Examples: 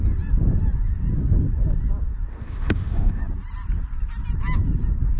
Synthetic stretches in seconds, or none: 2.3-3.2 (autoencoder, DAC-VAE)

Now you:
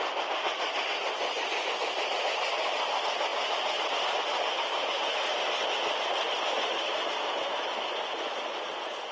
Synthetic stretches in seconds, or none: none

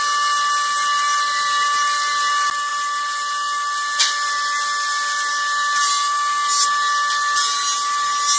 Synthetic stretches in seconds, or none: none